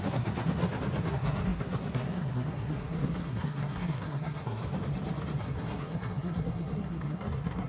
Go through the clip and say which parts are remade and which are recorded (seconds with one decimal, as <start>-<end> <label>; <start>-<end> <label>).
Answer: 0.0-0.6 remade; 0.6-1.1 recorded; 1.1-4.6 remade; 4.6-5.4 recorded; 5.4-7.7 remade